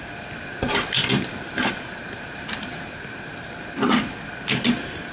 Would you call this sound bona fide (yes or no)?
yes